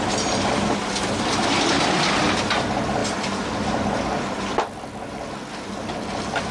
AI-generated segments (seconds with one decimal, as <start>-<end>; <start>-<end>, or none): none